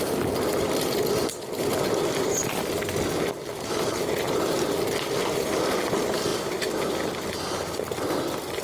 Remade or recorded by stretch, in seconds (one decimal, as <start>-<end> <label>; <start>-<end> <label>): 0.0-8.6 recorded